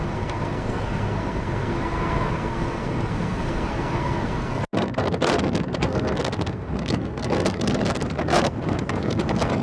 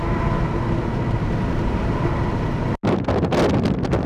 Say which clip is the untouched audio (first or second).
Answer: second